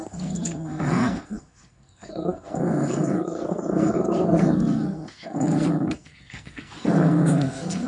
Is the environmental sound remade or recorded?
remade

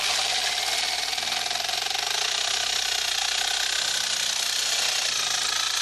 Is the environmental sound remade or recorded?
recorded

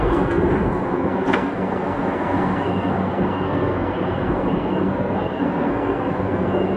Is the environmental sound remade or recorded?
remade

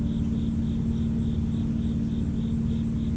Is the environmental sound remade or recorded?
recorded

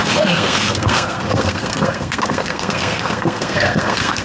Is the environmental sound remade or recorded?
remade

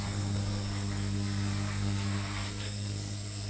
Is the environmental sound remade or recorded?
remade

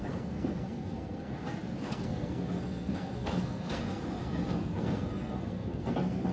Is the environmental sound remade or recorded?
remade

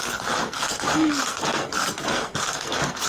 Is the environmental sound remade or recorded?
remade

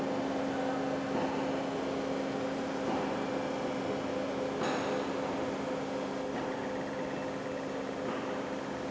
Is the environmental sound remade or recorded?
recorded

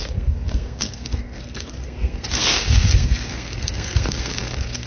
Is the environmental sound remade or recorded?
remade